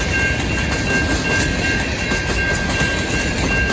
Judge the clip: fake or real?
real